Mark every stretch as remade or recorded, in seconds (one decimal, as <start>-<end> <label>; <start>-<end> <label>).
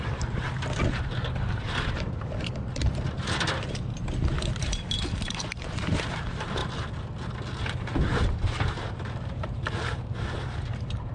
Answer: 0.0-6.6 remade; 6.6-7.6 recorded; 7.6-11.1 remade